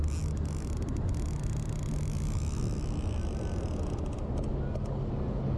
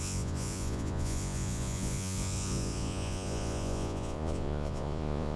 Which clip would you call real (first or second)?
first